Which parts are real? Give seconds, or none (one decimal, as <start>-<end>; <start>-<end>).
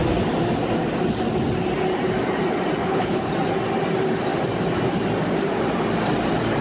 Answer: 0.0-2.8; 3.3-6.6